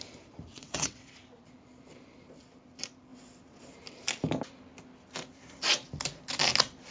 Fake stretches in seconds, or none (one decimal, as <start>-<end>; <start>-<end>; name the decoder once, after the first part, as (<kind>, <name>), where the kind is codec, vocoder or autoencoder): 0.5-1.1 (vocoder, WaveNeXt)